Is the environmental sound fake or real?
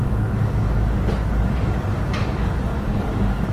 fake